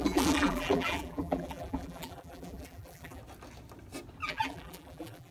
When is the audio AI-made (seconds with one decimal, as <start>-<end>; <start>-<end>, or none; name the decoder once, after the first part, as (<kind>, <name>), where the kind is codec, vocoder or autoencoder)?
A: 0.0-3.2 (vocoder, BigVGAN v2); 4.2-5.3